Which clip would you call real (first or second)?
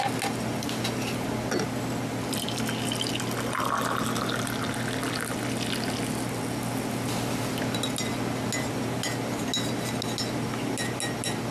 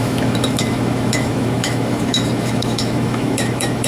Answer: first